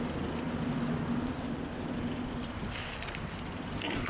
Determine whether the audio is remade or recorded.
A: recorded